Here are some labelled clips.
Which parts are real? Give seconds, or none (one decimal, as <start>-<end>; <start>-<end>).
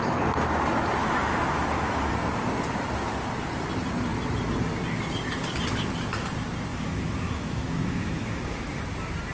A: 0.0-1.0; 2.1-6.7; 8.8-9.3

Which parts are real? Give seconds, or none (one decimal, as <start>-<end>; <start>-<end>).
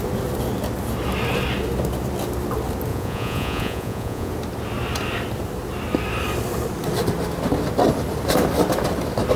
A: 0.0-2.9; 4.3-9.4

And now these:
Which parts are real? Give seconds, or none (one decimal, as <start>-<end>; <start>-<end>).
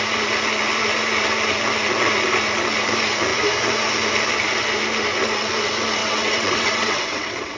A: 0.0-6.0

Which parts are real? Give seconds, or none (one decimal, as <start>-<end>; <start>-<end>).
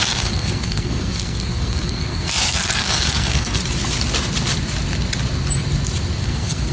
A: 3.6-6.2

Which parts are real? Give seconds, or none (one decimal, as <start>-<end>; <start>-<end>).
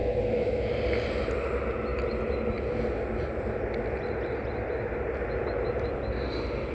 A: 0.7-6.7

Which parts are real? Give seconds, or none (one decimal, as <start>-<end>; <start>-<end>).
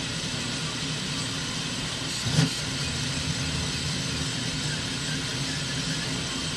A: 0.0-6.6